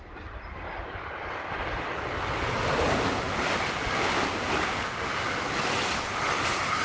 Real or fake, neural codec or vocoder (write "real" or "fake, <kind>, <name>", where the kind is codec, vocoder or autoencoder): real